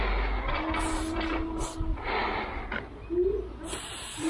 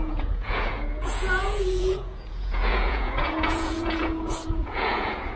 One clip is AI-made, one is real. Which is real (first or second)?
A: first